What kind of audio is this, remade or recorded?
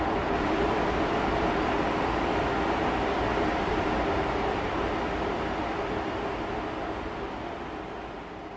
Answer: remade